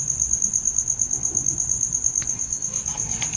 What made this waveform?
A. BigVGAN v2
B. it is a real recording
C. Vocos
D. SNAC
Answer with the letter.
B